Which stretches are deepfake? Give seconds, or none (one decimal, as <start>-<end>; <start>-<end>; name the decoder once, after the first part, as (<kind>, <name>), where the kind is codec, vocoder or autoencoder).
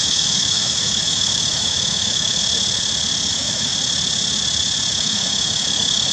0.0-2.4 (autoencoder, DAC-VAE); 3.3-3.7; 4.9-6.1